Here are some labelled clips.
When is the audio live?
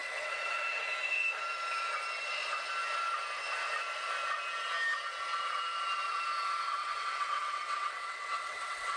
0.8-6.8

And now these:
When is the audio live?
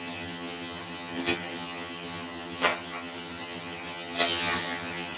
none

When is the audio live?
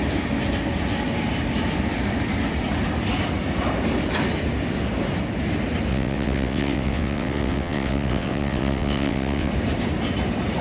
0.0-5.9; 9.5-10.6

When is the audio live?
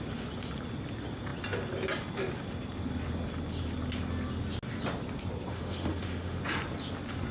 0.0-5.5; 6.4-7.3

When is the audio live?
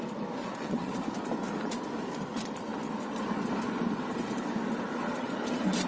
0.0-0.4; 1.0-5.9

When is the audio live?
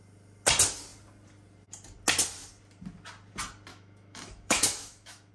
0.0-3.7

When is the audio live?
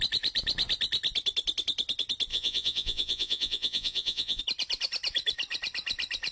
0.0-2.3; 4.4-6.3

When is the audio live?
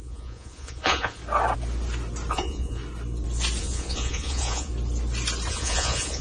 1.2-2.3; 2.8-3.6; 4.7-5.5